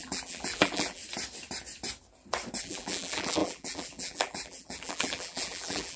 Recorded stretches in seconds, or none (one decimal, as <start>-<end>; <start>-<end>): 1.0-2.6